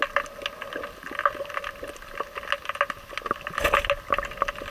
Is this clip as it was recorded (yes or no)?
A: yes